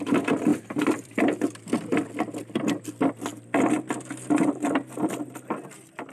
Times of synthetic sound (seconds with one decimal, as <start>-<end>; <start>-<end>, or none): 0.5-1.7